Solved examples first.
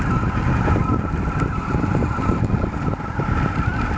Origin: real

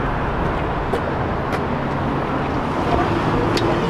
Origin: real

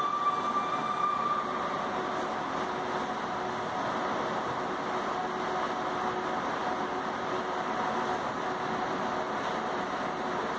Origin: real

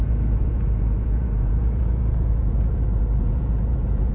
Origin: fake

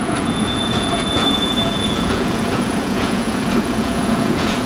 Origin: fake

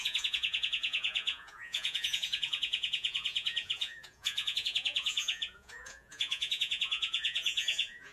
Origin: fake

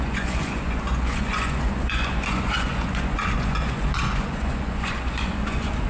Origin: fake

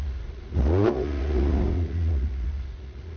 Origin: fake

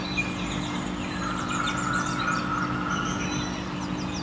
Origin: real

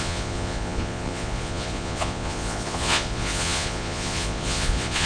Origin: fake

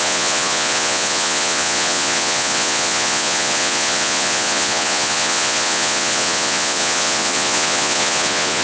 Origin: fake